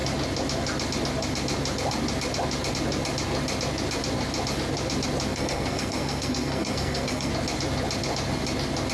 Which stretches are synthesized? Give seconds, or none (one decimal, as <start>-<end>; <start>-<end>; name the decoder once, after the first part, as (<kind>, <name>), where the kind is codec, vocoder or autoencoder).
5.3-7.3 (codec, SNAC)